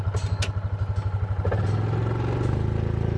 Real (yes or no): yes